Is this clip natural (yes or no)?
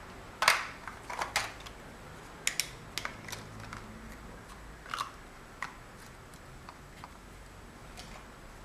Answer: yes